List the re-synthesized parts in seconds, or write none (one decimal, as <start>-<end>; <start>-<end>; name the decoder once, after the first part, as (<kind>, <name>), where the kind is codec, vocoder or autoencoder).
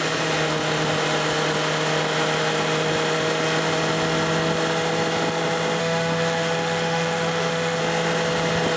5.8-7.8 (autoencoder, DAC-VAE)